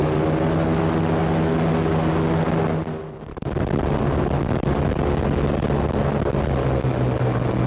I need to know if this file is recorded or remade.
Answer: recorded